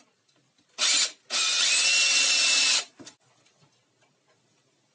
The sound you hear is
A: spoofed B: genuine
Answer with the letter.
B